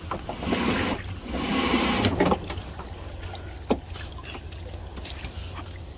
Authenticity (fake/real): real